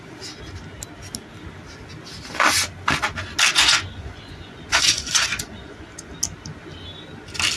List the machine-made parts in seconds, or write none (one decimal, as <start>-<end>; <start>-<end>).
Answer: 3.5-6.1